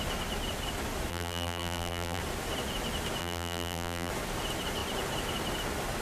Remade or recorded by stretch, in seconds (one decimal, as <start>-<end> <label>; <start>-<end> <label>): 0.0-1.1 recorded; 1.1-2.2 remade; 2.2-3.2 recorded; 3.2-4.1 remade; 4.1-6.0 recorded